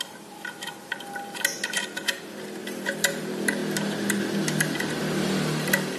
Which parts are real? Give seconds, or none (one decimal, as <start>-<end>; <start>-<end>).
0.0-2.6; 3.2-6.0